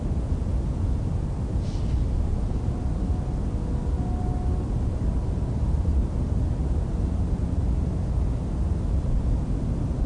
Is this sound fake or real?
real